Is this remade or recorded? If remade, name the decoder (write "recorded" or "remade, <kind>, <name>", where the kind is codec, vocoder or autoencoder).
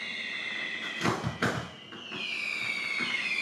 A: recorded